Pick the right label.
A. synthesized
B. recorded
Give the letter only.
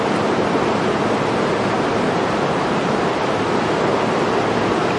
B